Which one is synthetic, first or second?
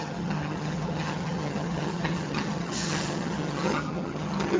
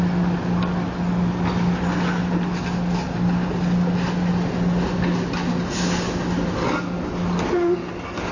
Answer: first